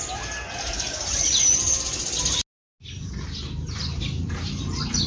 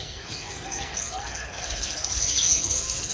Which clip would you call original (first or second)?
first